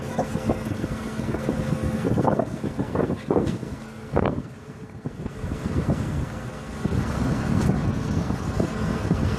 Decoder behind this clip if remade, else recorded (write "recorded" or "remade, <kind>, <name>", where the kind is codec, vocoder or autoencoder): remade, codec, SNAC